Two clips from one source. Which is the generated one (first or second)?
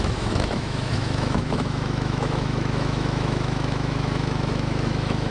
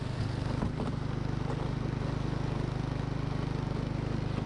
first